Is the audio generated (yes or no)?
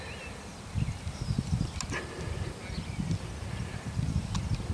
no